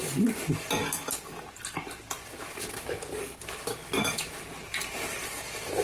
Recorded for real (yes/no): yes